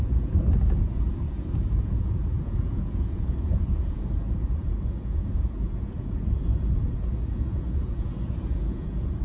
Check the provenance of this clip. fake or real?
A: fake